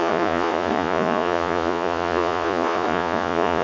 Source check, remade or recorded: remade